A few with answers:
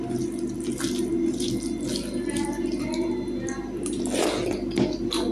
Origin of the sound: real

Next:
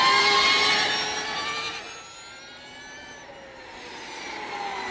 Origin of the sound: real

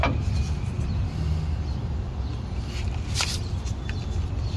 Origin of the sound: real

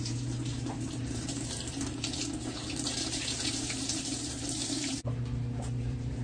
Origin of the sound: fake